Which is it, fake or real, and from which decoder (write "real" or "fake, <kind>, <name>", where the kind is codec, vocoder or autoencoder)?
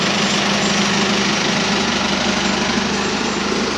real